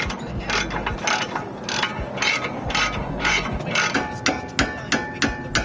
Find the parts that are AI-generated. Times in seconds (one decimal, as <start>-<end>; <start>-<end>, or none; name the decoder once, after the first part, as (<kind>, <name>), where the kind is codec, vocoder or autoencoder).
3.0-3.6 (vocoder, Vocos)